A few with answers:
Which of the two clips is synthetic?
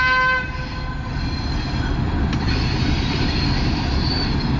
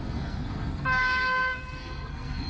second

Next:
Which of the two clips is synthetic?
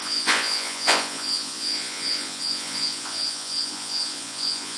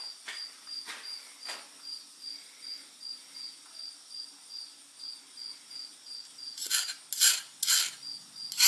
first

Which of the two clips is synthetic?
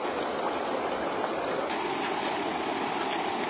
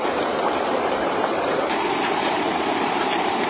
second